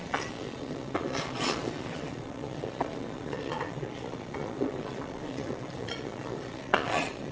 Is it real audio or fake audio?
fake